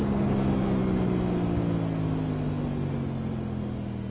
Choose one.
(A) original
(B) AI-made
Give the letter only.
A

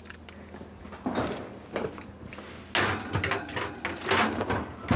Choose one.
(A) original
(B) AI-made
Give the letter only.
A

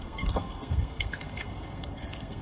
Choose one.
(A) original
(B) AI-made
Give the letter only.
B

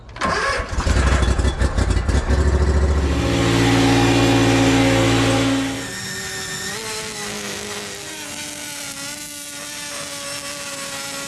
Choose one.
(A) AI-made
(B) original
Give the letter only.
B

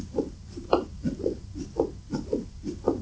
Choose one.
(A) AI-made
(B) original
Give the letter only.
B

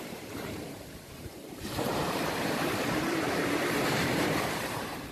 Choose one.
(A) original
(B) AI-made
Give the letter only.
B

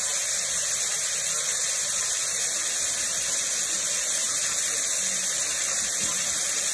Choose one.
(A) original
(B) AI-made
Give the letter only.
A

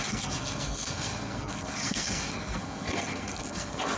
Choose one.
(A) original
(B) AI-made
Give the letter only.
B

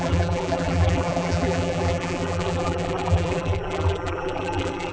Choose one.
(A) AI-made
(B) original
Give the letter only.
A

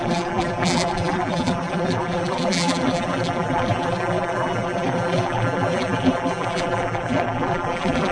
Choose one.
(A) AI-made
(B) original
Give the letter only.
A